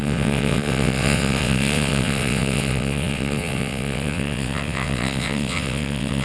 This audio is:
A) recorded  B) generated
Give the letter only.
B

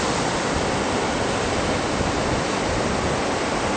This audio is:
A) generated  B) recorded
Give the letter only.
B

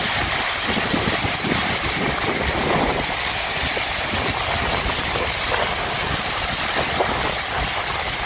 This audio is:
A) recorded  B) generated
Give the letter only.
A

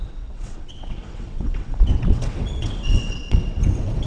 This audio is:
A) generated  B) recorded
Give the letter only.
A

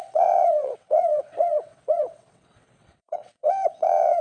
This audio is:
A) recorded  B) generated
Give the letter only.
B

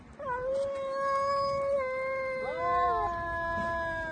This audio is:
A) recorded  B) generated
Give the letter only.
A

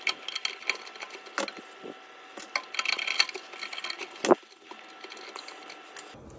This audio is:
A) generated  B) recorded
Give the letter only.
B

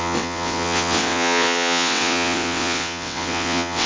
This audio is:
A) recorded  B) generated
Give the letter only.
B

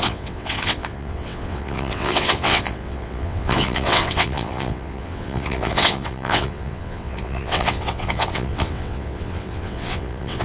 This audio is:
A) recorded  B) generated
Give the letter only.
B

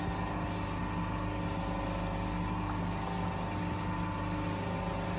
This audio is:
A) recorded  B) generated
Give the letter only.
A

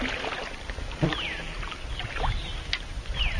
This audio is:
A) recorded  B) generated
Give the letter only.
A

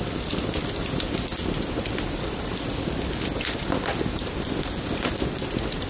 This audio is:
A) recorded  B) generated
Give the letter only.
A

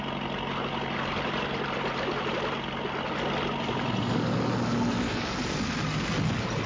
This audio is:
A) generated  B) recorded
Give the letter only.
B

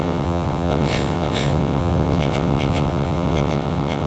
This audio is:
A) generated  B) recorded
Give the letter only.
A